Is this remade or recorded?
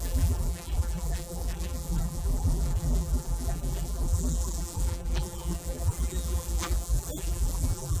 remade